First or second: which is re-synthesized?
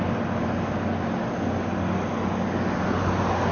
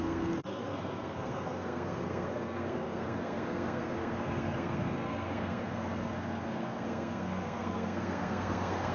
second